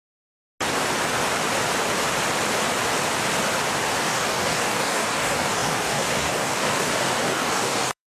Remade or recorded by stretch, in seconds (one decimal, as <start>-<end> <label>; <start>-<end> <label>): 0.0-0.4 remade; 0.4-4.0 recorded; 4.0-8.1 remade